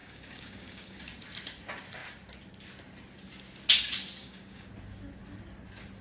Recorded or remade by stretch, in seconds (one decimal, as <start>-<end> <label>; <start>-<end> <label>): 0.0-1.0 remade; 1.0-4.2 recorded; 4.2-4.7 remade; 4.7-6.0 recorded